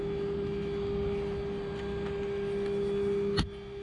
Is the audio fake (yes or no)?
no